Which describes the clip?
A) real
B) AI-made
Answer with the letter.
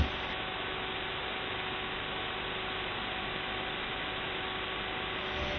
A